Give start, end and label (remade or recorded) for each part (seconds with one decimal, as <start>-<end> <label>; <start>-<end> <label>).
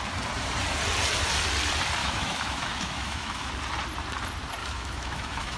0.0-2.0 recorded; 2.0-3.5 remade; 3.5-4.6 recorded; 4.6-5.6 remade